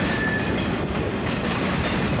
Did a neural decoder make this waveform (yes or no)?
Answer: no